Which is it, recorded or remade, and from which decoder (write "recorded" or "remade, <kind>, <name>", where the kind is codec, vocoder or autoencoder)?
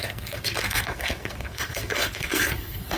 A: remade, codec, SNAC